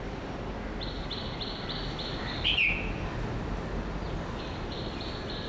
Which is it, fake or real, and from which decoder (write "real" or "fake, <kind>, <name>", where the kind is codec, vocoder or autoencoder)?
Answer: real